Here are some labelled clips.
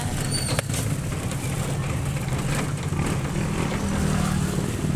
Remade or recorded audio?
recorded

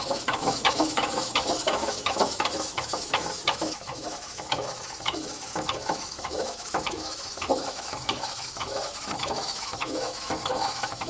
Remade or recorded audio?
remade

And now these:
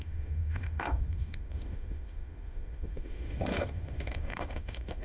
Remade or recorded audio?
remade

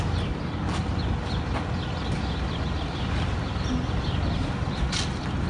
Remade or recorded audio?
recorded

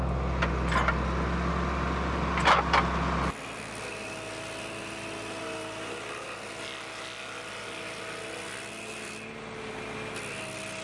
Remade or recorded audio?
recorded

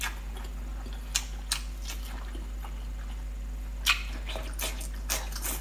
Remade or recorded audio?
recorded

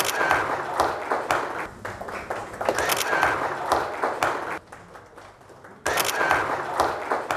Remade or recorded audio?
recorded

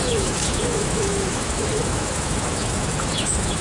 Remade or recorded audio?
remade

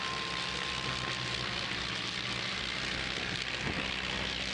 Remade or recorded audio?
recorded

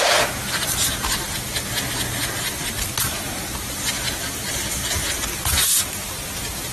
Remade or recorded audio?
recorded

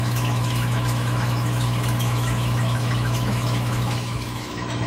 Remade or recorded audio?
remade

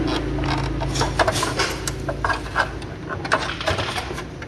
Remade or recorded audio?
recorded